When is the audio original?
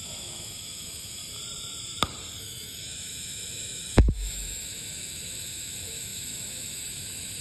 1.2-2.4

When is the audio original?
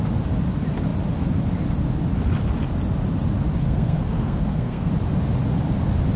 0.0-3.6; 4.9-6.2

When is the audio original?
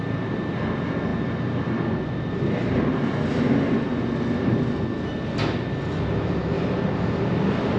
0.0-7.8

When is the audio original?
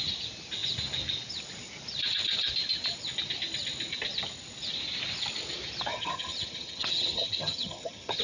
0.0-5.9